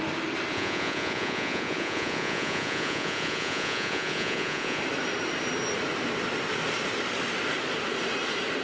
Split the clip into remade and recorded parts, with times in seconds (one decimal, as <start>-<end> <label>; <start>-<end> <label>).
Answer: 0.0-0.5 recorded; 0.5-4.8 remade; 4.8-8.6 recorded